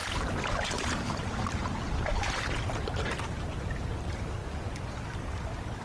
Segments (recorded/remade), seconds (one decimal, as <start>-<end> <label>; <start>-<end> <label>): 0.0-4.4 recorded; 4.4-4.9 remade; 4.9-5.8 recorded